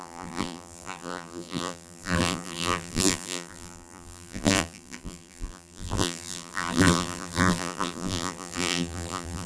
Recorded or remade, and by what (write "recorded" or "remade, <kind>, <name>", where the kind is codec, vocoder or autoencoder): remade, vocoder, BigVGAN v2